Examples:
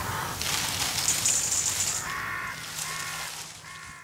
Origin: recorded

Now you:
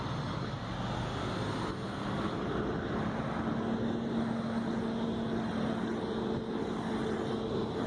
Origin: recorded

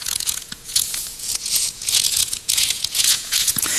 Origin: remade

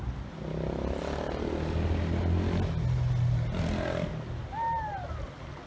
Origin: recorded